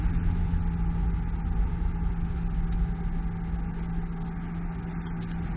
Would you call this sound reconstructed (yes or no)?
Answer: no